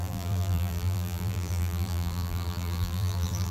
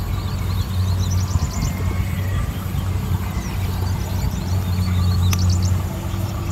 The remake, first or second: first